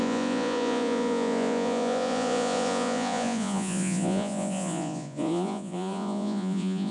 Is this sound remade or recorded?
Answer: remade